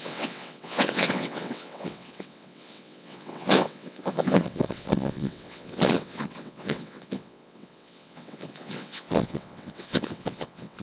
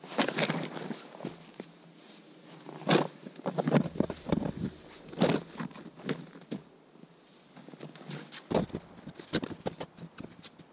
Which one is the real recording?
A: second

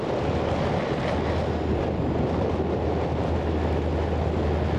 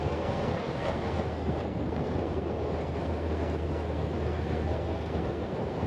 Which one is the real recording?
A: first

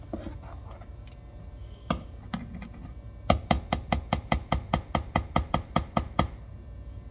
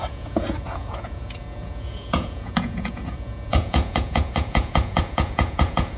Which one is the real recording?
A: first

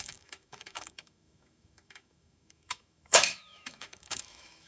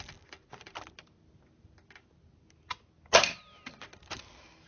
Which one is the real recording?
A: second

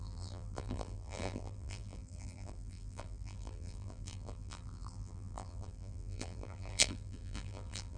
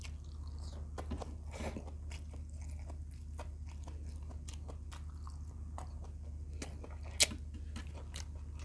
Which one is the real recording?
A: second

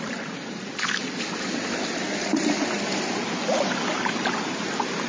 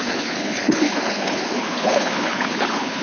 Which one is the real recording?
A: first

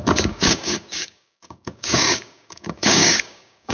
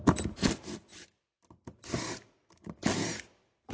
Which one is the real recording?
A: second